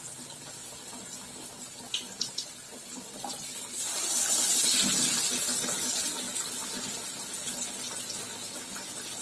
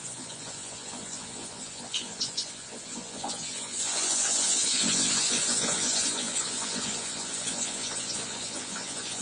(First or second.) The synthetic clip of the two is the second